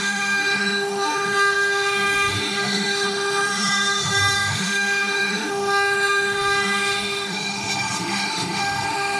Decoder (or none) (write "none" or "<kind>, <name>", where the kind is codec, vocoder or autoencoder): autoencoder, DAC-VAE